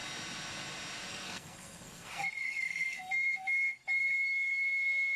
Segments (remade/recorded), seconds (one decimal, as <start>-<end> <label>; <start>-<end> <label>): 0.0-1.1 recorded; 1.1-5.2 remade